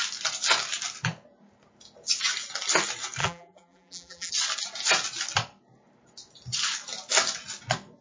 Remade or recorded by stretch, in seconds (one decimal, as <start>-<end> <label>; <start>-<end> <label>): 0.0-3.2 recorded; 3.2-4.3 remade; 4.3-8.0 recorded